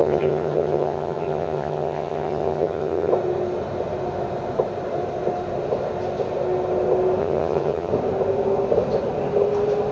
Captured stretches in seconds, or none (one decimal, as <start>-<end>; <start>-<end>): 3.1-7.2; 7.9-9.9